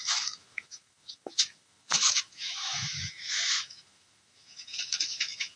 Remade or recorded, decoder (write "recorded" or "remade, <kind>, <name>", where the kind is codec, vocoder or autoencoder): remade, autoencoder, DAC-VAE